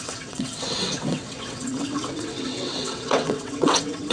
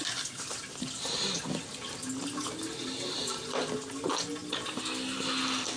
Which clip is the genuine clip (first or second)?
second